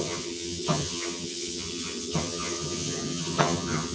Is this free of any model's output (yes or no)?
no